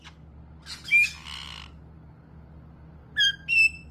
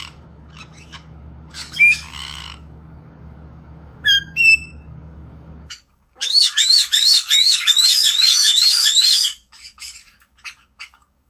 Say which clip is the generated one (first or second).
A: second